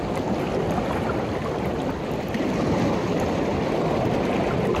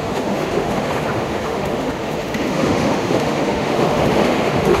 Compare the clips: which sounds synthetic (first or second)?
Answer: second